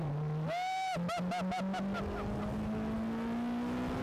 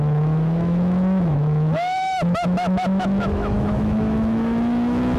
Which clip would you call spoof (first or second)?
second